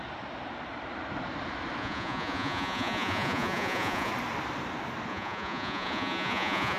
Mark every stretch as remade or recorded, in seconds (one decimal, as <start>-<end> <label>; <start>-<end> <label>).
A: 0.0-1.8 recorded; 1.8-4.1 remade; 4.1-5.1 recorded; 5.1-6.8 remade